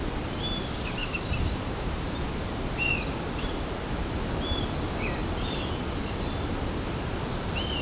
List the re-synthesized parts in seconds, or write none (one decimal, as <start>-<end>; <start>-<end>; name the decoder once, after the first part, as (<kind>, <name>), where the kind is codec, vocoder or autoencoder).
1.0-1.8 (vocoder, BigVGAN v2); 5.2-5.8